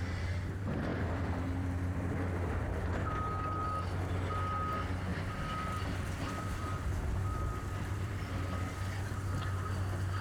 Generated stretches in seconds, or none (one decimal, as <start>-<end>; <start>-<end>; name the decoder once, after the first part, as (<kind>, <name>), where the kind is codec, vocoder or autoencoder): 0.9-2.8 (vocoder, BigVGAN v2); 5.1-8.3